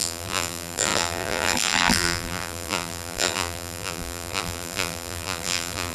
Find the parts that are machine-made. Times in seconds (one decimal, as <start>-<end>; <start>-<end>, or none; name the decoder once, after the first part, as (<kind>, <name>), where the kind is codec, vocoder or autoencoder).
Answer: 0.0-5.9 (vocoder, BigVGAN v2)